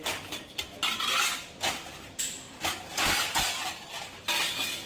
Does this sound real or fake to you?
real